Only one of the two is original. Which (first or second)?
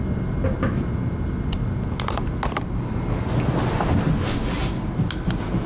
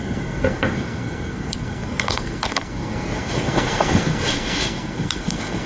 first